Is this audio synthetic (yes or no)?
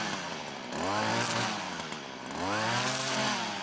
no